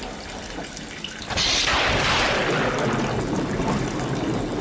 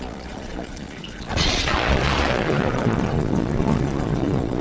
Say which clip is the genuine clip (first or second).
first